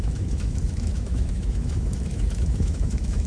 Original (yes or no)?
no